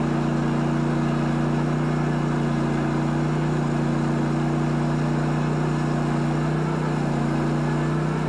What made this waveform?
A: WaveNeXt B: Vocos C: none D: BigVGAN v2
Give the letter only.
C